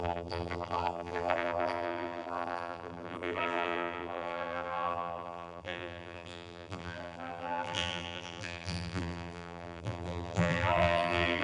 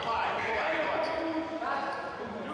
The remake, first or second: first